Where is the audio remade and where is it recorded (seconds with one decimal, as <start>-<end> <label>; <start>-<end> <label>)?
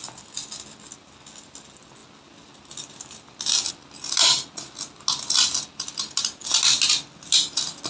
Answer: 0.0-7.9 recorded